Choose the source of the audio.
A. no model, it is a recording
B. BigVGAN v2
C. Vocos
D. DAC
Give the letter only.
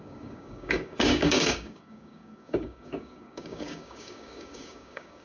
D